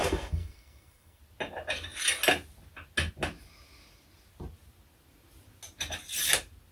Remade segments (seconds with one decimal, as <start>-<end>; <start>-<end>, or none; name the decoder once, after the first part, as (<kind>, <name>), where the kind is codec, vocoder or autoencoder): 0.0-1.2 (codec, SNAC)